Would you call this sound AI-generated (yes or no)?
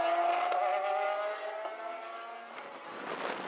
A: no